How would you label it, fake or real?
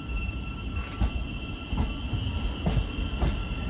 real